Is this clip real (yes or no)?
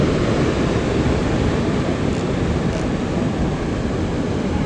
yes